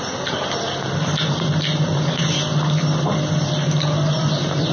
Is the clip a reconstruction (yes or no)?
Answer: no